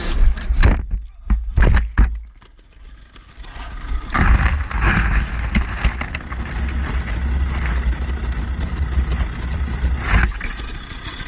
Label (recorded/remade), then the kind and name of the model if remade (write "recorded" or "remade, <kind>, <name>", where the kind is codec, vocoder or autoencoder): recorded